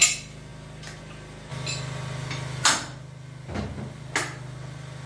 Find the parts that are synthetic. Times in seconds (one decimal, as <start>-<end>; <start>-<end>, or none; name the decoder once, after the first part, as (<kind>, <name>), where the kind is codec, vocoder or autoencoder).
none